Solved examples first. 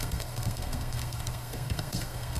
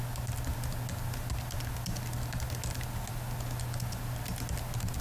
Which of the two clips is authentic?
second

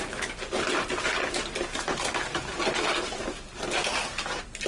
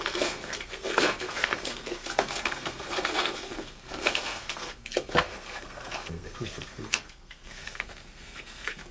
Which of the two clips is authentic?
first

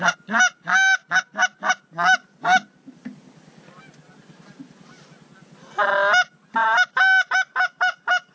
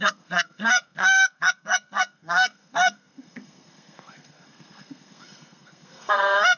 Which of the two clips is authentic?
first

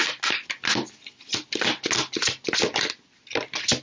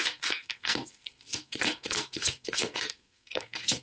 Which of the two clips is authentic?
first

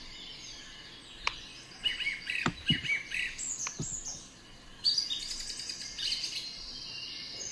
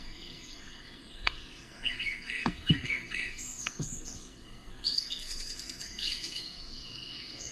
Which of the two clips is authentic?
first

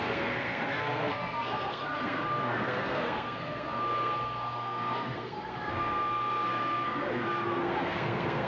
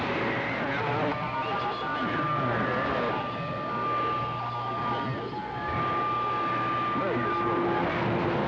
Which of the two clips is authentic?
second